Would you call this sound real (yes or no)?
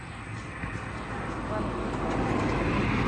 yes